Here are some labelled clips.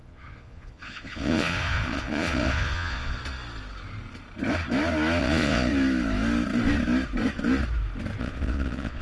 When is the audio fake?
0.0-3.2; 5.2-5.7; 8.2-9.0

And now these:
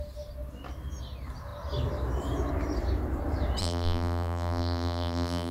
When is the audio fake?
3.6-5.5

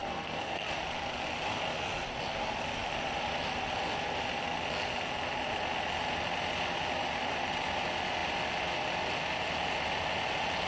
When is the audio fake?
0.0-0.7

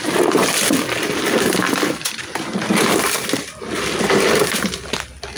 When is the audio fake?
none

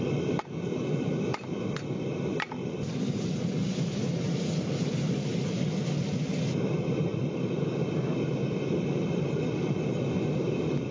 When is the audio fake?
none

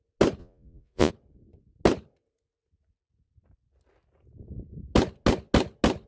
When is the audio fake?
0.4-1.1